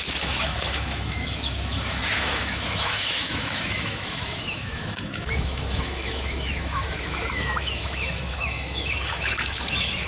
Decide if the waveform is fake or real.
fake